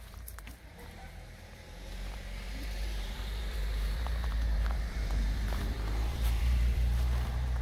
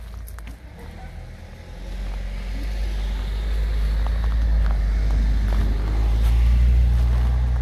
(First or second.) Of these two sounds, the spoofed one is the first